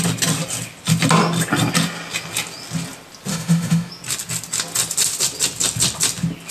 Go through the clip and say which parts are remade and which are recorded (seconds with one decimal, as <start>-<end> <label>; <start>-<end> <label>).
0.0-3.3 recorded; 3.3-3.9 remade; 3.9-6.5 recorded